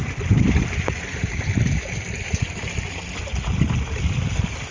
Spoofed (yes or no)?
no